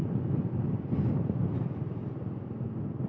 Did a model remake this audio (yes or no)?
no